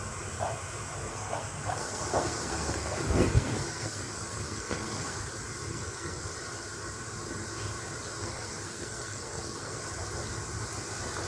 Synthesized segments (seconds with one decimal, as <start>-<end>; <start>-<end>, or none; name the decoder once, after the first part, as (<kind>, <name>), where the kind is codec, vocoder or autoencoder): 1.1-5.3 (codec, SNAC); 5.7-6.2; 8.2-9.8